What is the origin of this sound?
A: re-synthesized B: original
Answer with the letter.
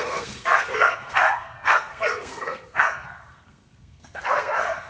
A